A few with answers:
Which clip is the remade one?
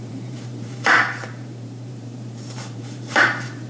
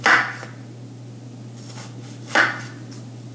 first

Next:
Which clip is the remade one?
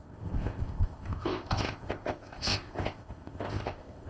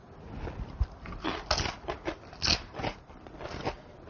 first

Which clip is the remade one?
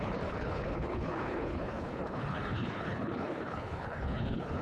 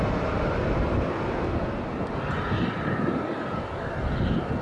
first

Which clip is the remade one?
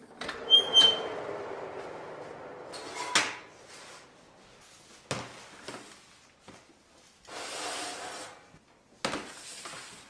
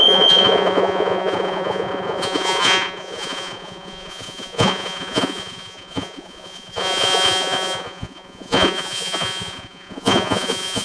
second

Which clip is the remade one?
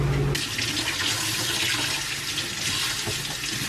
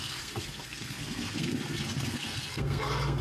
second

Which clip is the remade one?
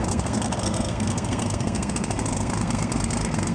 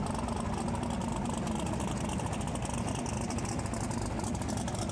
first